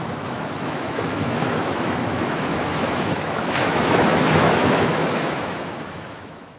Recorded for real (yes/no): no